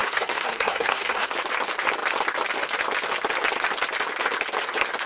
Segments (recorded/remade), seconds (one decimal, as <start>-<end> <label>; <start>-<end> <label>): 0.0-1.3 remade; 1.3-5.1 recorded